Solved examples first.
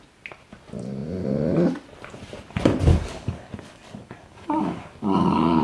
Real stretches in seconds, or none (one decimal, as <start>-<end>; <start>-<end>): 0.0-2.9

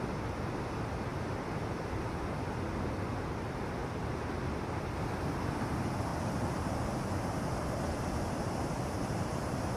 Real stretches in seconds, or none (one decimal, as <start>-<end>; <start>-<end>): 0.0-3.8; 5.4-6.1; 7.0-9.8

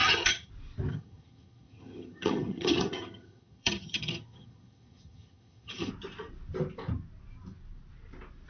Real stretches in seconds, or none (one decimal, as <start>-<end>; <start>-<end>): 0.5-0.9; 5.9-8.5

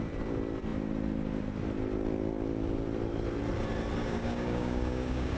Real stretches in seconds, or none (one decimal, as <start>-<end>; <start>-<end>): 0.0-4.0